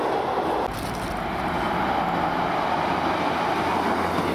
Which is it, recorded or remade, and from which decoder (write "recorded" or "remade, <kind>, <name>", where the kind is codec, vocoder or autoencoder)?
recorded